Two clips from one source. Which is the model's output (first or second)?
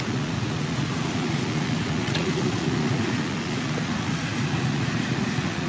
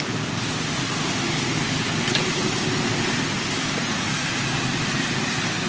first